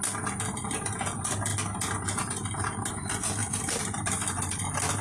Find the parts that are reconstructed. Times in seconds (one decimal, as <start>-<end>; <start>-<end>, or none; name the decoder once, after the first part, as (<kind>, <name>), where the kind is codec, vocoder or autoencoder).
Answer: 3.4-4.1 (vocoder, BigVGAN v2)